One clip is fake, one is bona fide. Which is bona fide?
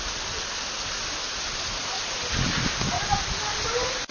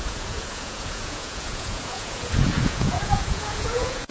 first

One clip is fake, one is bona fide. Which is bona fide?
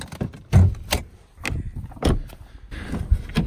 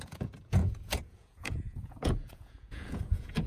first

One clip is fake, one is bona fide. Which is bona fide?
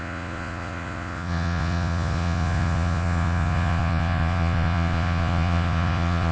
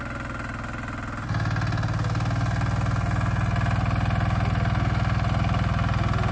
second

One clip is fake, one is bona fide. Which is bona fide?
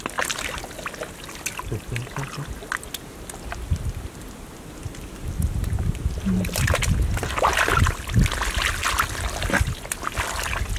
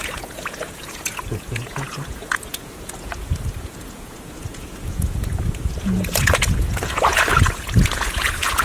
first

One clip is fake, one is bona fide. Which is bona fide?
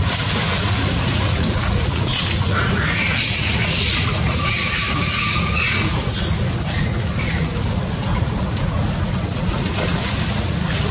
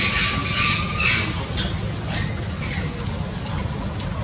second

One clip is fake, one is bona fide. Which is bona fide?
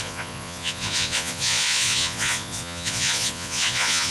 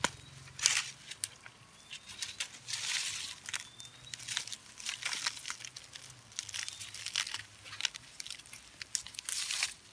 second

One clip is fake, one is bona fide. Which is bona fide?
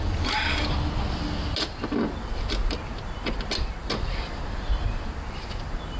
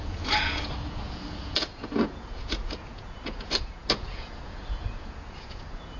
first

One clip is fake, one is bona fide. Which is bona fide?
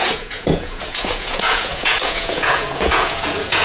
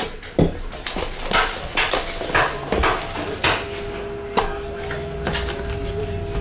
second